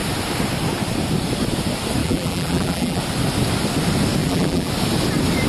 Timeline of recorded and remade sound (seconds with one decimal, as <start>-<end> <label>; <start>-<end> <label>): 0.0-2.0 recorded; 2.0-3.0 remade; 3.0-4.2 recorded; 4.2-4.7 remade; 4.7-5.5 recorded